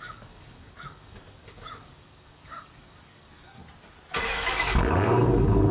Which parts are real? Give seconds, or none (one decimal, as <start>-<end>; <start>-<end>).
3.6-4.2